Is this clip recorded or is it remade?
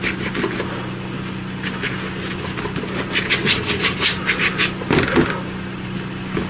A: recorded